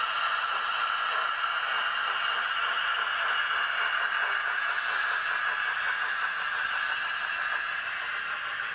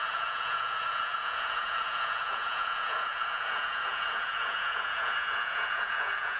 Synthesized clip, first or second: second